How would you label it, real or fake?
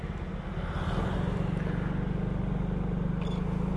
real